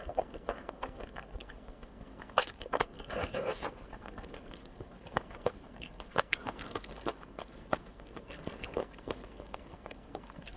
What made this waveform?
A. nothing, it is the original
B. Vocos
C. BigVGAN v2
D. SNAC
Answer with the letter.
D